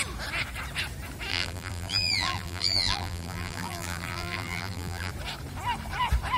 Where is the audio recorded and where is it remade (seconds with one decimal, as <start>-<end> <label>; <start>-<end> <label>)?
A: 0.0-1.3 recorded; 1.3-5.1 remade; 5.1-6.4 recorded